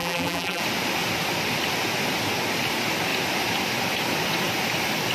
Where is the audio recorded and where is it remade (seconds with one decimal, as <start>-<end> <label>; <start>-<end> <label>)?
0.0-0.6 remade; 0.6-5.1 recorded

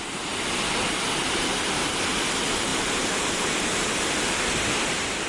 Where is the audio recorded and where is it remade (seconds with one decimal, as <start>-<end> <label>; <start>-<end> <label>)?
0.0-1.2 recorded; 1.2-1.9 remade; 1.9-2.7 recorded; 2.7-3.9 remade; 3.9-5.3 recorded

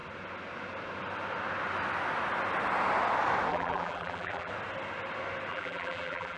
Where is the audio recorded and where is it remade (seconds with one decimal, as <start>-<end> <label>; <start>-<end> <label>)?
0.0-3.5 recorded; 3.5-4.5 remade; 4.5-5.5 recorded; 5.5-6.4 remade

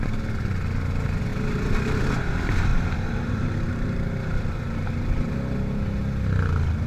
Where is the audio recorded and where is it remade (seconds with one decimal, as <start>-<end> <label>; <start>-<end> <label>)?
0.0-2.7 recorded; 2.7-5.4 remade; 5.4-6.9 recorded

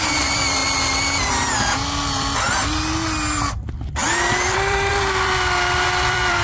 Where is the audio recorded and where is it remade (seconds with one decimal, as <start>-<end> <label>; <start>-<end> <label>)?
0.0-0.6 remade; 0.6-3.5 recorded; 3.5-6.4 remade

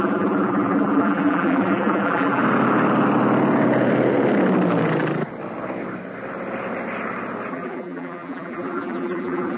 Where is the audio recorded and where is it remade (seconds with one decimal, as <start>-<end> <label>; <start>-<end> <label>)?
0.0-2.4 remade; 2.4-7.5 recorded; 7.5-9.6 remade